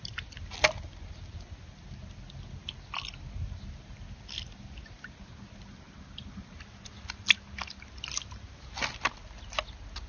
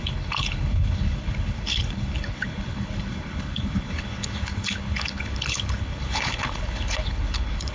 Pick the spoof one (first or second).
second